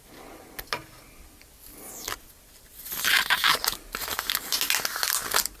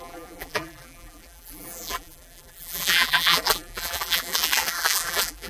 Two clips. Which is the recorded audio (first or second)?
first